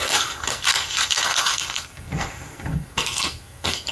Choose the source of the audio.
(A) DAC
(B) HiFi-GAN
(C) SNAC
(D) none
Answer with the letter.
C